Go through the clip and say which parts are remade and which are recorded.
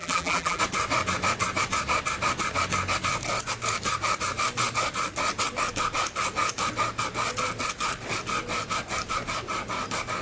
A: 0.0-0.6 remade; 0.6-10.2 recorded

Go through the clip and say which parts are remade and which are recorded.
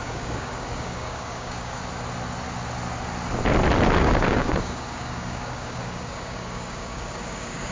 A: 0.0-1.8 remade; 1.8-4.0 recorded; 4.0-7.7 remade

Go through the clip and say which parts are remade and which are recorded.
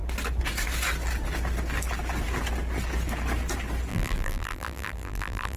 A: 0.0-3.9 recorded; 3.9-5.6 remade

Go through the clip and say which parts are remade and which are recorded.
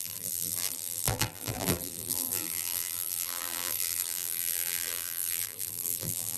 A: 0.0-6.4 remade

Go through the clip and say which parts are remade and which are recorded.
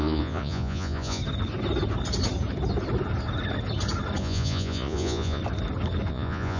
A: 0.0-1.2 remade; 1.2-4.2 recorded; 4.2-5.4 remade; 5.4-6.1 recorded; 6.1-6.6 remade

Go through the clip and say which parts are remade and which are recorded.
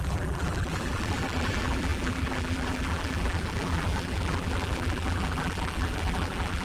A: 0.0-6.6 remade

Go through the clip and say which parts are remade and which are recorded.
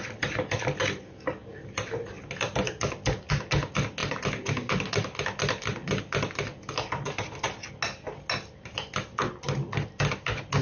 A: 0.0-10.6 recorded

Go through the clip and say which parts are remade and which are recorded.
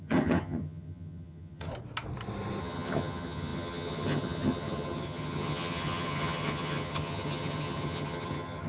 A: 0.0-1.7 remade; 1.7-2.6 recorded; 2.6-8.7 remade